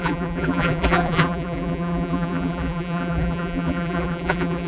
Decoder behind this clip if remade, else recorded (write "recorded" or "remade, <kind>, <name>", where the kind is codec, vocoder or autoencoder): remade, vocoder, BigVGAN v2